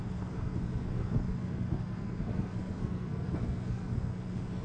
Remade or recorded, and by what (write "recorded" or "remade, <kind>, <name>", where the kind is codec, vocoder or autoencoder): remade, codec, SNAC